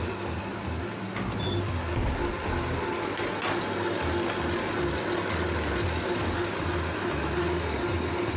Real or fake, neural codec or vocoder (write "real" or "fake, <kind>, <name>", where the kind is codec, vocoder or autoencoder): real